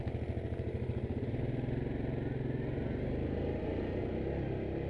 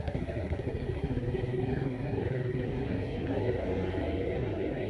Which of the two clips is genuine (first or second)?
first